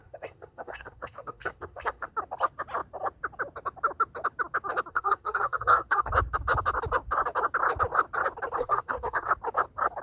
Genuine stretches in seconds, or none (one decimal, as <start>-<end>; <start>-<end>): 2.1-4.9; 6.1-8.6; 9.3-10.0